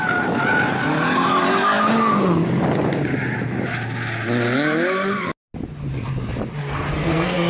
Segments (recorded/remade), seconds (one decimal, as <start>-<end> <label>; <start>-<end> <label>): 0.0-6.6 recorded; 6.6-7.5 remade